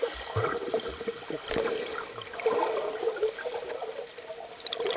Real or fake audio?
real